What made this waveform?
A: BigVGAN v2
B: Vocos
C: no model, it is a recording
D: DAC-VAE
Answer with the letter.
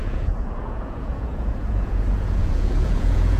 B